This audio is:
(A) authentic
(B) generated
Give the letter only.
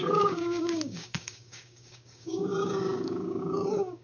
B